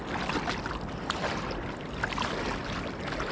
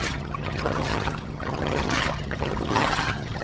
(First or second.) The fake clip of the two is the second